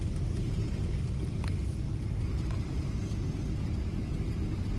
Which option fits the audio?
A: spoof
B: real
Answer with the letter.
B